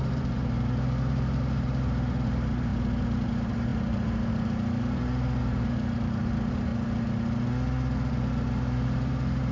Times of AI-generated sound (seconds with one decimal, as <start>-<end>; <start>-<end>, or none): 0.0-6.7; 8.1-9.5